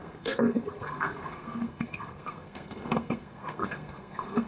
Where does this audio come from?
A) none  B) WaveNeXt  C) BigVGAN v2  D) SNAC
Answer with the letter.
D